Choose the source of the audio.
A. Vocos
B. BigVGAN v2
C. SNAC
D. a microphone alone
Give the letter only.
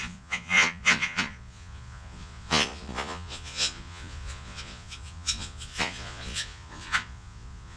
A